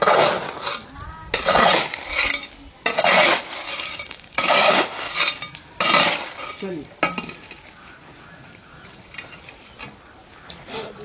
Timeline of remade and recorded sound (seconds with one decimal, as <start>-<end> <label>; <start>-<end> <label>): 0.0-3.7 recorded; 3.7-5.1 remade; 5.1-11.0 recorded